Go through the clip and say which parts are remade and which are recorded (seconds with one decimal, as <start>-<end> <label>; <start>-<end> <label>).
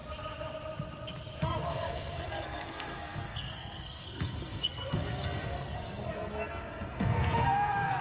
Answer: 0.0-1.4 recorded; 1.4-8.0 remade